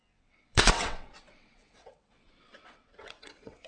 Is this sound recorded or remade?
remade